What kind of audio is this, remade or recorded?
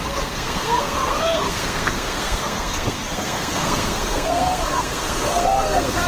remade